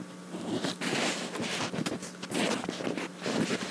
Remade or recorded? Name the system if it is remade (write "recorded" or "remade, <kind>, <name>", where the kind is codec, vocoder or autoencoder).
recorded